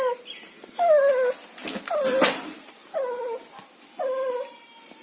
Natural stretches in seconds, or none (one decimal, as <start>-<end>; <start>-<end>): 0.0-5.0